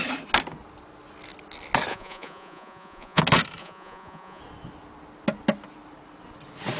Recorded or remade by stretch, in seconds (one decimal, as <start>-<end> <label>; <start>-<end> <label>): 0.0-1.9 recorded; 1.9-3.2 remade; 3.2-3.6 recorded; 3.6-4.4 remade; 4.4-6.8 recorded